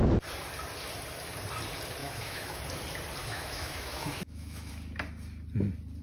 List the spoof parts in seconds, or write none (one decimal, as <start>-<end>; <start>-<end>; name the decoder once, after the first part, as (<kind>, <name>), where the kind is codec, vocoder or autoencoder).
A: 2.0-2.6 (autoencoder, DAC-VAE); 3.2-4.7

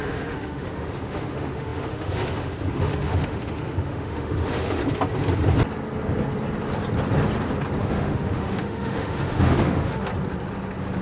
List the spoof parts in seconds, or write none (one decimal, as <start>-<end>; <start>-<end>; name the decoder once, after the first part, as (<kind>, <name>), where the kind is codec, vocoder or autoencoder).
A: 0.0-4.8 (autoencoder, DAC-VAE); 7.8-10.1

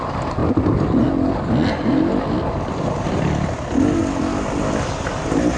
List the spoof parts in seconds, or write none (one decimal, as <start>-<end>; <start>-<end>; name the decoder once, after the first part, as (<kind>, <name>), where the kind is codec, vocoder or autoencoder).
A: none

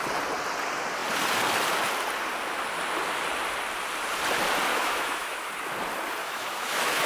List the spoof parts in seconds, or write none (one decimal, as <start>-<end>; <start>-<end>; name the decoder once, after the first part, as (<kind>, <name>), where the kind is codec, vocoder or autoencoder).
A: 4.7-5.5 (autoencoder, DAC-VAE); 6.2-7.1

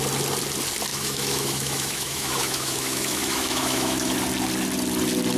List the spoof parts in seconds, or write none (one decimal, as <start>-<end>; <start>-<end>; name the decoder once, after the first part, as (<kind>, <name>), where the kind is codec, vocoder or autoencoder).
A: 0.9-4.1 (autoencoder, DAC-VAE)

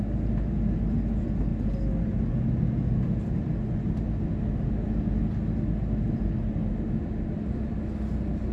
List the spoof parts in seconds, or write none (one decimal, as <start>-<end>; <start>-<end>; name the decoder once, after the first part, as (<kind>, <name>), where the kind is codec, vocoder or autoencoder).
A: none

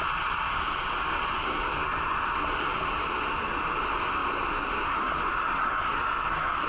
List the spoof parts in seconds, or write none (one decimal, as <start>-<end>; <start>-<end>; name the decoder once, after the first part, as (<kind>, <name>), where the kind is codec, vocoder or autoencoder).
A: none